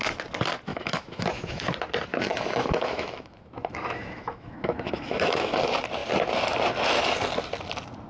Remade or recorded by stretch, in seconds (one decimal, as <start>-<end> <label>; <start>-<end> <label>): 0.0-0.7 recorded; 0.7-1.6 remade; 1.6-2.1 recorded; 2.1-5.5 remade; 5.5-8.1 recorded